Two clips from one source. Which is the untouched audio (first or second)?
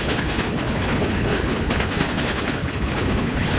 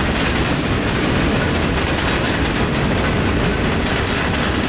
second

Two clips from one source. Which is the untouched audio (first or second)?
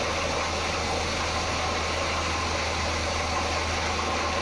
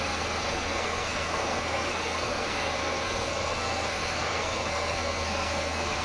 first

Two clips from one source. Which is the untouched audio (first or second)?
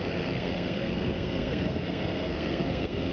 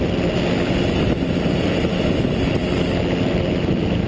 second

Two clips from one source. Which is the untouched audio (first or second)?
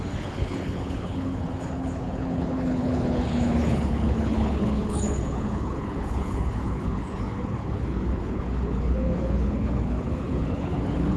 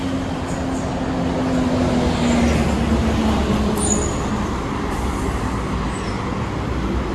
second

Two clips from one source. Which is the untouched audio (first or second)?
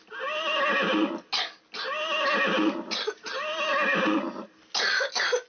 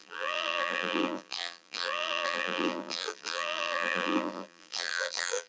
first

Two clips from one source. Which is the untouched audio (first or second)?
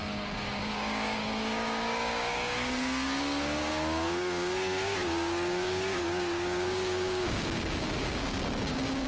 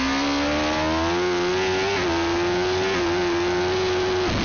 second